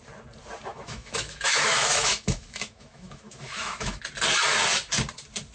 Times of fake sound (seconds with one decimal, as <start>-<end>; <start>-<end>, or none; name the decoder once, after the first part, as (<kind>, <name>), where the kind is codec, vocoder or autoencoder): 0.7-4.0 (autoencoder, DAC-VAE)

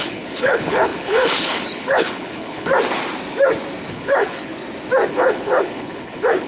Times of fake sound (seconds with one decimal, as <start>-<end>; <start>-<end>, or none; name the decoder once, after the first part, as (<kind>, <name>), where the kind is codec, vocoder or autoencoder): 0.0-2.7 (codec, HILCodec); 3.9-4.5; 5.1-6.5

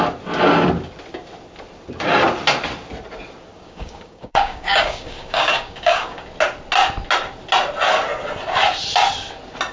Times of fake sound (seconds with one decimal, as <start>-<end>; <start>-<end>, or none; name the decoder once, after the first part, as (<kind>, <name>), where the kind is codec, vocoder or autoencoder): 3.5-6.2 (codec, DAC)

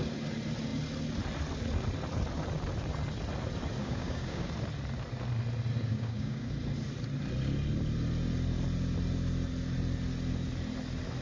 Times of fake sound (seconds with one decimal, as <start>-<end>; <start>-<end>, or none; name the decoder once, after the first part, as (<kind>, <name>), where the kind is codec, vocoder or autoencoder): 3.8-4.5 (codec, DAC); 5.9-6.5